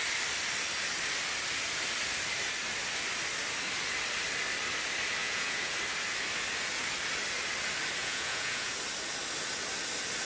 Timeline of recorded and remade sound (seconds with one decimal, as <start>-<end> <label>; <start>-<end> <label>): 0.0-5.2 recorded; 5.2-5.7 remade; 5.7-8.0 recorded; 8.0-8.8 remade; 8.8-10.2 recorded